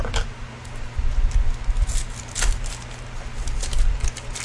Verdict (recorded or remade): recorded